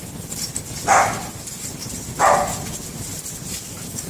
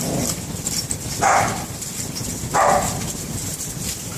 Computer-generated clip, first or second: second